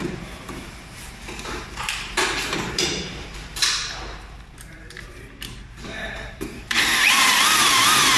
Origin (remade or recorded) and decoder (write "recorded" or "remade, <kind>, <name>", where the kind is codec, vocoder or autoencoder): remade, vocoder, BigVGAN v2